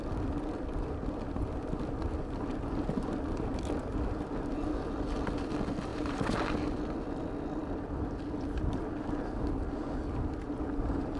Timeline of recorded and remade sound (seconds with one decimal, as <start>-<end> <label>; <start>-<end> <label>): 0.0-5.9 recorded; 5.9-6.4 remade; 6.4-11.2 recorded